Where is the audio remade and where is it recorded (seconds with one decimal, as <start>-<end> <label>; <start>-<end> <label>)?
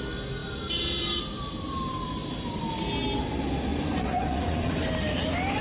0.0-3.7 recorded; 3.7-4.7 remade; 4.7-5.6 recorded